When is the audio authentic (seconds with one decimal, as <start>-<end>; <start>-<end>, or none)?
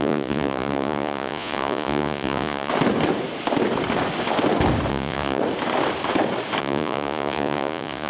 2.7-4.9; 5.4-6.6